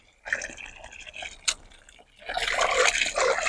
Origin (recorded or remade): recorded